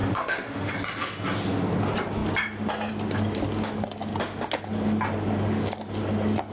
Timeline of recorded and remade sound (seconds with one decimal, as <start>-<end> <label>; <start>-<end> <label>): 0.0-0.7 remade; 0.7-6.5 recorded